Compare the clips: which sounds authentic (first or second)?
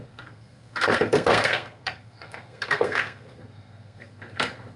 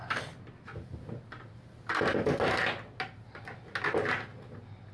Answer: second